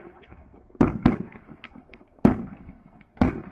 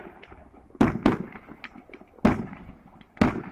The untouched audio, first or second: second